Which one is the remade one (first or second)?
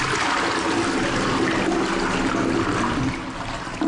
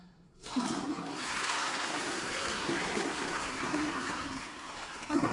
second